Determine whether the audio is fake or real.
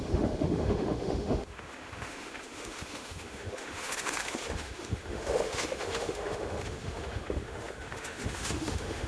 fake